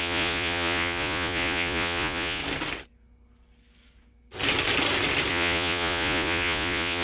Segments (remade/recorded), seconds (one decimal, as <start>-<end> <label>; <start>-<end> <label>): 0.0-2.4 remade; 2.4-5.3 recorded; 5.3-7.0 remade